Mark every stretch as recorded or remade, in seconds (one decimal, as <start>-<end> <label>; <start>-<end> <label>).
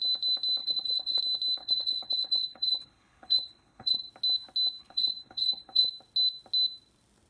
0.0-0.6 recorded; 0.6-1.2 remade; 1.2-1.6 recorded; 1.6-4.1 remade; 4.1-4.8 recorded; 4.8-5.9 remade; 5.9-7.3 recorded